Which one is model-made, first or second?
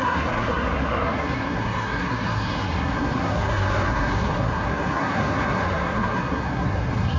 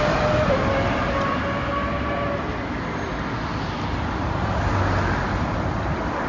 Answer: first